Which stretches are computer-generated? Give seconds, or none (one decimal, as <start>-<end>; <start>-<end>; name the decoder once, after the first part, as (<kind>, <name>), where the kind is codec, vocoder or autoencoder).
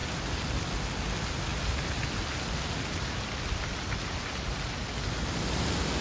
none